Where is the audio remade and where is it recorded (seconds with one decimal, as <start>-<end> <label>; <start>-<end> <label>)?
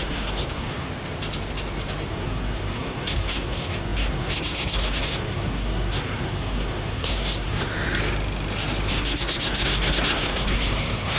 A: 0.0-0.9 remade; 0.9-2.1 recorded; 2.1-7.7 remade; 7.7-8.9 recorded; 8.9-11.2 remade